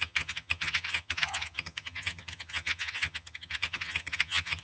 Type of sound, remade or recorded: remade